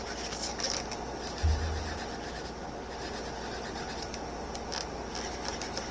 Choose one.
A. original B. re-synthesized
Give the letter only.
A